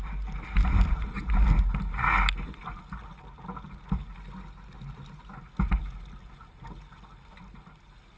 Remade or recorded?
recorded